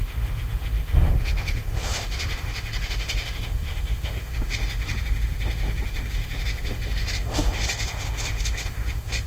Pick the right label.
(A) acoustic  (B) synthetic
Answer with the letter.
B